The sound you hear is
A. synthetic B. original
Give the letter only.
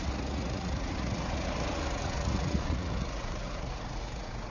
A